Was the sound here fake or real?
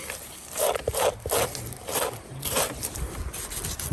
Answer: real